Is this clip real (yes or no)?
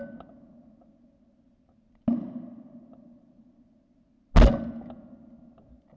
yes